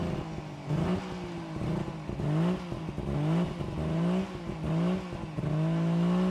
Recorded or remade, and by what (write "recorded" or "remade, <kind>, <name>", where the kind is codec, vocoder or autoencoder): recorded